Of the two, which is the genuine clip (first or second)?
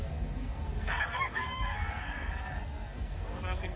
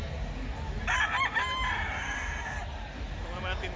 second